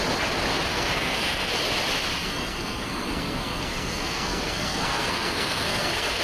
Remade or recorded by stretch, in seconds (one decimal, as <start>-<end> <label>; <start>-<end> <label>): 0.0-0.7 recorded; 0.7-1.5 remade; 1.5-2.2 recorded; 2.2-6.2 remade